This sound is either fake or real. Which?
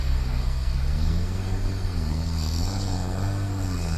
fake